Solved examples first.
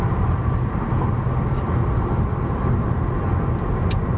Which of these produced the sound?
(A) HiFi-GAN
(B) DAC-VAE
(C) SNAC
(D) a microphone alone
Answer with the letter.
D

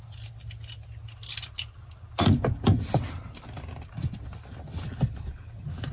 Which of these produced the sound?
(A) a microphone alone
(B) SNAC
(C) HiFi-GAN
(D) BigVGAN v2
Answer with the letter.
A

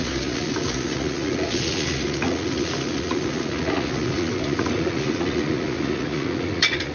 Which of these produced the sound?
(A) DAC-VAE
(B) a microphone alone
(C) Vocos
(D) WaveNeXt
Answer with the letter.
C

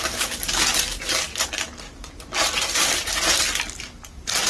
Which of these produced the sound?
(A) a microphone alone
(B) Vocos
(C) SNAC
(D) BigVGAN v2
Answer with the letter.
A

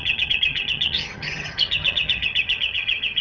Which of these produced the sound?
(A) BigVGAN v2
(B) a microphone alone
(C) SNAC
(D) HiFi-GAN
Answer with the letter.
D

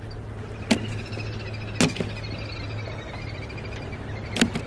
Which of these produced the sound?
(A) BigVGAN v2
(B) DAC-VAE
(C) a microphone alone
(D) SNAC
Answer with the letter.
C